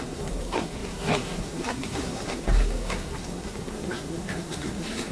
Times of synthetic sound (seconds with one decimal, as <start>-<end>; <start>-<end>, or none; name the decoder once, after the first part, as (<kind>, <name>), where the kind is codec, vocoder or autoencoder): 0.0-5.1 (codec, SNAC)